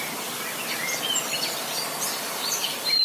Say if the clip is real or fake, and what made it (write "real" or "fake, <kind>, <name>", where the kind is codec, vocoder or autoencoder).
fake, vocoder, BigVGAN v2